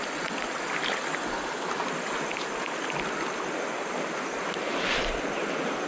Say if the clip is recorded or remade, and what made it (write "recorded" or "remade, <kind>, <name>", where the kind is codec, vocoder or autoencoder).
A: recorded